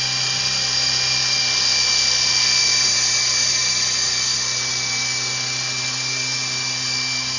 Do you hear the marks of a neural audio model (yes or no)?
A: no